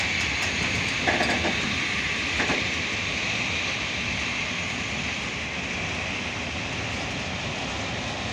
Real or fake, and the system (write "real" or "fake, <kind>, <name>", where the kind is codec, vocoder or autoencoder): real